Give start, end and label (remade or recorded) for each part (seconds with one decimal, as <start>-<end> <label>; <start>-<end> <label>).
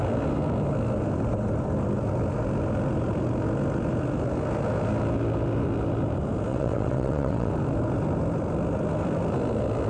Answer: 0.0-6.5 recorded; 6.5-7.5 remade; 7.5-9.9 recorded